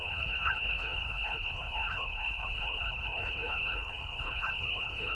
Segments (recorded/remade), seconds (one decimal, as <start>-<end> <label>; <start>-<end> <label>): 0.0-5.1 remade